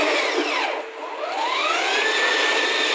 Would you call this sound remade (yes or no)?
no